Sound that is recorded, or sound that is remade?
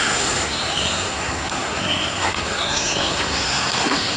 remade